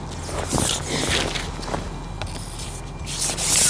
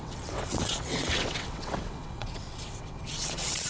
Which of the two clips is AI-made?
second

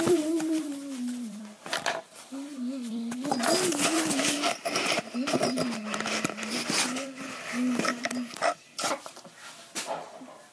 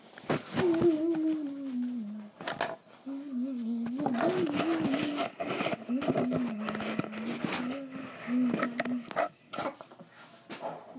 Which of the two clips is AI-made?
first